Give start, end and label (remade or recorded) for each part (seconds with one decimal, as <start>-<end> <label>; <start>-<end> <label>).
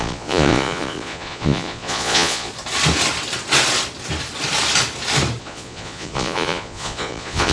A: 0.0-2.5 remade; 2.5-5.4 recorded; 5.4-7.5 remade